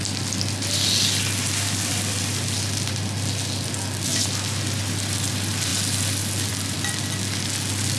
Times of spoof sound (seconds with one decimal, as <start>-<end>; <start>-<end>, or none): none